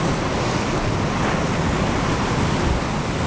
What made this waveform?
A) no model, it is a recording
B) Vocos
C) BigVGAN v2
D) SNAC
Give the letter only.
A